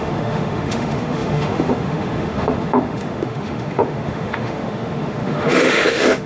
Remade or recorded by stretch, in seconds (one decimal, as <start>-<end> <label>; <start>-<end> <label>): 0.0-6.3 remade